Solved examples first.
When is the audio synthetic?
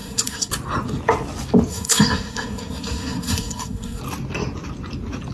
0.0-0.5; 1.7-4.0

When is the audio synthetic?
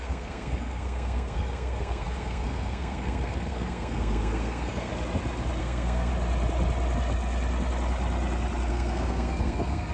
0.0-4.9; 5.6-6.1; 8.7-9.9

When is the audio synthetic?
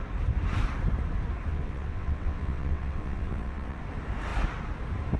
1.5-3.8